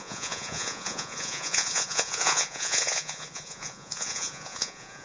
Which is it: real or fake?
fake